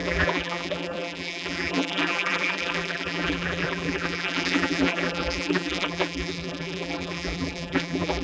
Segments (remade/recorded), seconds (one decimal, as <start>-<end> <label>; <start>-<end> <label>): 0.0-8.2 remade